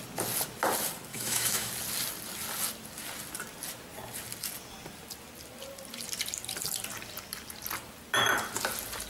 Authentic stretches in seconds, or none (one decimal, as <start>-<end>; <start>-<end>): 0.0-1.1; 1.7-9.1

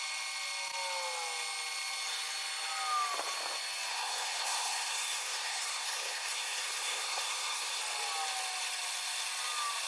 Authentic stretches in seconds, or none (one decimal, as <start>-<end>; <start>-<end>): 0.0-3.9; 7.8-9.9